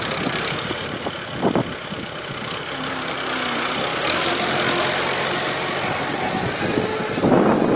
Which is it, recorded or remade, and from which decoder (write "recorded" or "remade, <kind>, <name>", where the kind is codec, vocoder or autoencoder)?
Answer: recorded